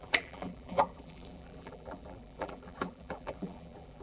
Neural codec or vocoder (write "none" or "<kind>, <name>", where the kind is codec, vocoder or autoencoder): vocoder, BigVGAN v2